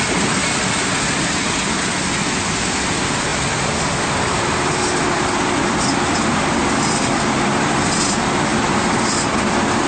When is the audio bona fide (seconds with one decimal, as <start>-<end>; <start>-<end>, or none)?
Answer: 0.0-3.3; 8.0-8.5; 9.1-9.9